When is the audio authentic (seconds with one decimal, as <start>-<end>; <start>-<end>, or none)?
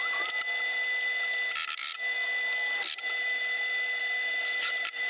none